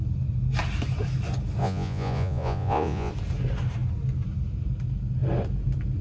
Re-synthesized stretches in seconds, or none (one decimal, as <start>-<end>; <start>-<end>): 1.6-3.1